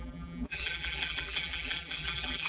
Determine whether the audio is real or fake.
fake